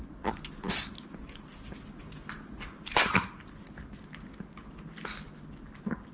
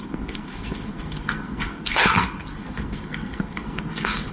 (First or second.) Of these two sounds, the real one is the first